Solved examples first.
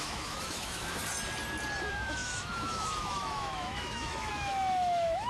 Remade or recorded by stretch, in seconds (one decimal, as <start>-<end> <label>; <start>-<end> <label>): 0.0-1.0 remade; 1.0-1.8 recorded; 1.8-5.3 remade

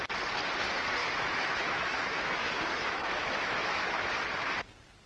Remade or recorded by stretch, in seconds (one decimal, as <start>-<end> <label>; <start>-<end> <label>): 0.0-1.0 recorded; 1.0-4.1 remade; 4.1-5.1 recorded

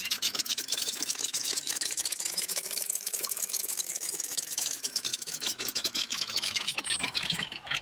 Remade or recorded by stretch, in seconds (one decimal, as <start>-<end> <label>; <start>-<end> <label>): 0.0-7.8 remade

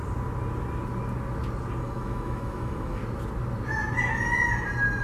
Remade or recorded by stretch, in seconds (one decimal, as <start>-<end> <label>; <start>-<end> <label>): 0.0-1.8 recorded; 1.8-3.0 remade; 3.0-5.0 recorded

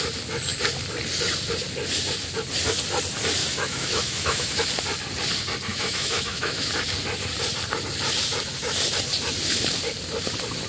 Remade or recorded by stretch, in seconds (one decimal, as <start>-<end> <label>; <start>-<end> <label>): 0.0-3.4 recorded; 3.4-4.6 remade; 4.6-5.7 recorded; 5.7-6.7 remade; 6.7-10.7 recorded